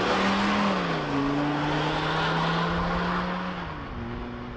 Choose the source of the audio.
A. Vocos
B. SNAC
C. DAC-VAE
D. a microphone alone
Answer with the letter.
D